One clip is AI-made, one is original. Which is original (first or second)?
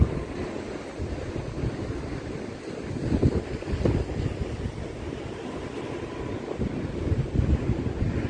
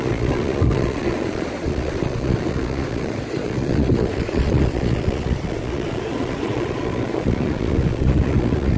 first